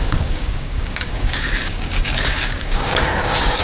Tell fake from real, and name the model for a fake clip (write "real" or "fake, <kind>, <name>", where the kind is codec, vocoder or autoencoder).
fake, codec, DAC